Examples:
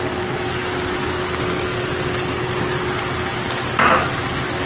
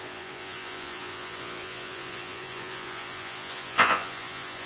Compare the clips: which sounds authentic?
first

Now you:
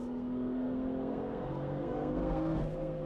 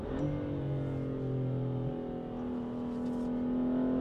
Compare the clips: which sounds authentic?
second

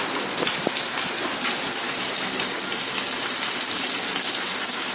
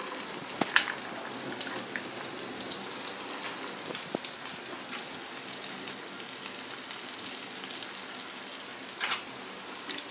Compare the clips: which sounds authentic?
second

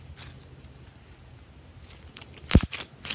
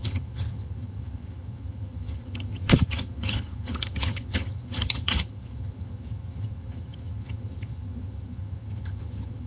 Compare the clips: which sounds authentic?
first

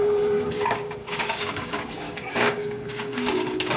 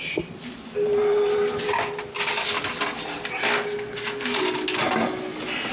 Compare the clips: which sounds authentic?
second